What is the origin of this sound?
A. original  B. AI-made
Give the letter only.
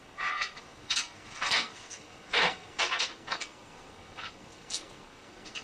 B